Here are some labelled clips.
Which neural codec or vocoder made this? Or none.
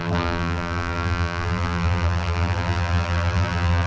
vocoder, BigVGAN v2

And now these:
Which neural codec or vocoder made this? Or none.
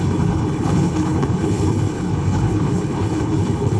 codec, HILCodec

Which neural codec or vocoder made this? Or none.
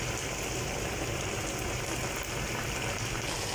none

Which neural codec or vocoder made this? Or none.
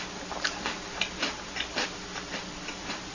none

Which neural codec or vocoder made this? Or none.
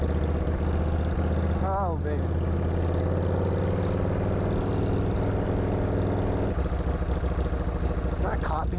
none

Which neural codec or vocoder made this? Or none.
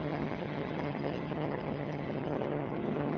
vocoder, HiFi-GAN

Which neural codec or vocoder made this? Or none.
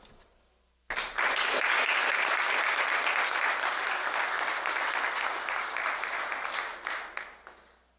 none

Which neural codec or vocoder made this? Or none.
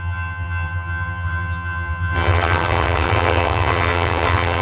vocoder, HiFi-GAN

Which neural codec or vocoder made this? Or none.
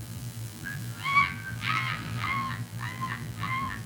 vocoder, BigVGAN v2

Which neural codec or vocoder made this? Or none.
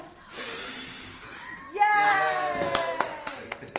none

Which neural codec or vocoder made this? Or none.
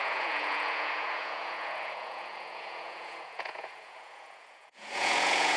vocoder, Vocos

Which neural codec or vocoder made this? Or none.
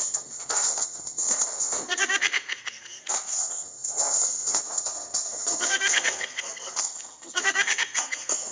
codec, SNAC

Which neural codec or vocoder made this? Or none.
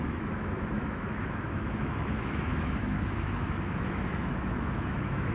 autoencoder, DAC-VAE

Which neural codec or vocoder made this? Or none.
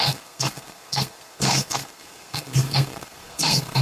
codec, SNAC